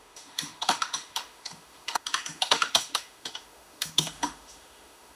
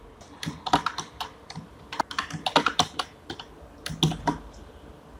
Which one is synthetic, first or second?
first